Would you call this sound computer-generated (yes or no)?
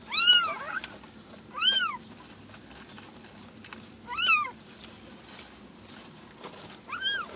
no